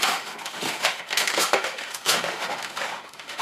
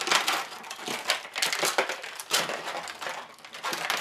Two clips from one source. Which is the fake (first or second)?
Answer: first